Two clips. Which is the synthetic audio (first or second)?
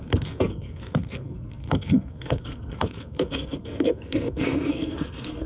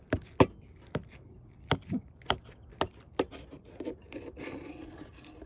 first